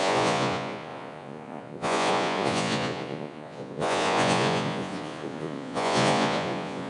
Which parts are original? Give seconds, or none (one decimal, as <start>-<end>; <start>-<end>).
none